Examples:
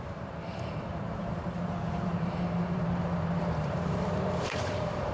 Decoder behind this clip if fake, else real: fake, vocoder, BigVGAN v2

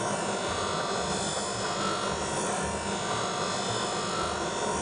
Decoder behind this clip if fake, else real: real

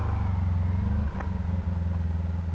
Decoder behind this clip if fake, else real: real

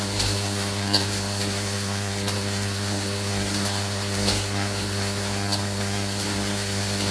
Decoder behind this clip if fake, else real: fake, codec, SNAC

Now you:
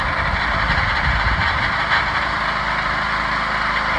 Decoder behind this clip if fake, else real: real